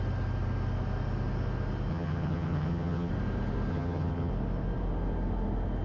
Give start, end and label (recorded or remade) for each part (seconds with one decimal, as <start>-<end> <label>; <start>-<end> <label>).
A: 0.0-1.9 recorded; 1.9-3.1 remade; 3.1-3.7 recorded; 3.7-4.3 remade; 4.3-5.8 recorded